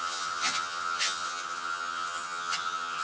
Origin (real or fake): fake